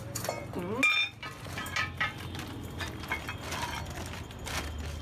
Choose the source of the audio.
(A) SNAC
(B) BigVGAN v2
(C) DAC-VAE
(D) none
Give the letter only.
D